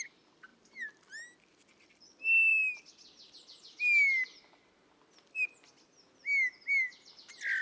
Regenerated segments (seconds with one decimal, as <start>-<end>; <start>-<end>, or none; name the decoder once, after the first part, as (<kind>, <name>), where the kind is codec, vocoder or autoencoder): 0.5-1.9 (vocoder, BigVGAN v2)